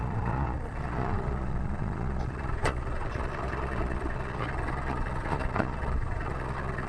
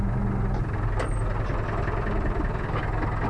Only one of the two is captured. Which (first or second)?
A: second